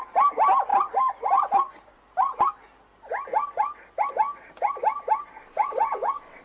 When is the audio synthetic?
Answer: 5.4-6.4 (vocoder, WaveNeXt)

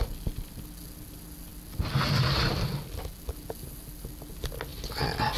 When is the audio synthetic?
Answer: none

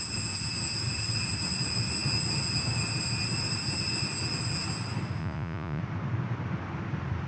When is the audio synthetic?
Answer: 5.2-5.8 (vocoder, Vocos)

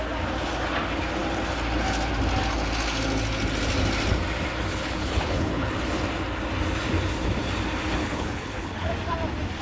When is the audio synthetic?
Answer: 4.7-5.7 (codec, HILCodec); 8.0-8.9

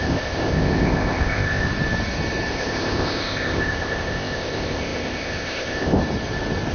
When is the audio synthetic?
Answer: 0.0-1.7 (codec, ZipCodec); 2.5-6.0

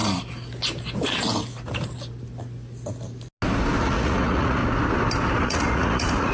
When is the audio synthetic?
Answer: 3.8-4.6 (vocoder, Vocos); 5.4-6.3

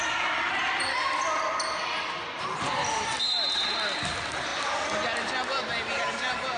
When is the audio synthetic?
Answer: none